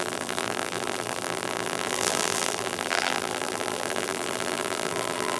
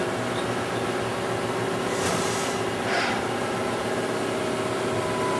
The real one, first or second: second